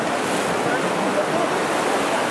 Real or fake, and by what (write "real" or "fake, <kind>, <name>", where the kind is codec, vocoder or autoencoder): real